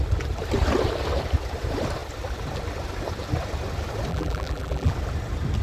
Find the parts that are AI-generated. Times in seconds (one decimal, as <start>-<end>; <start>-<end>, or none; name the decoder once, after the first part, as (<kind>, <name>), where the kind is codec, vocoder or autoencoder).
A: 4.1-4.9 (vocoder, BigVGAN v2)